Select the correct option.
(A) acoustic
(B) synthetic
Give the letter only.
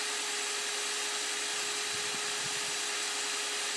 A